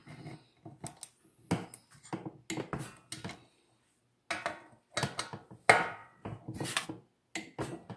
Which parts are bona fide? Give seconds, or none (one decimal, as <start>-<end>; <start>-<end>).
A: 0.0-8.0